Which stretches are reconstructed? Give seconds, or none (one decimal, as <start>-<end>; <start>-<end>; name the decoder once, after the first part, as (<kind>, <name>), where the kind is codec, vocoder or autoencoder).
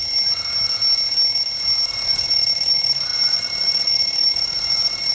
1.9-5.1 (vocoder, BigVGAN v2)